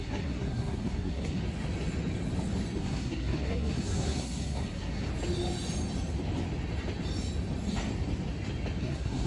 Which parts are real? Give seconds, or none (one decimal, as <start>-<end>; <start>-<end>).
1.4-2.8; 5.1-8.8